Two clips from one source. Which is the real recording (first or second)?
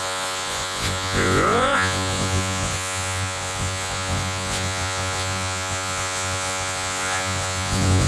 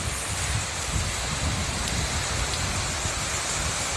second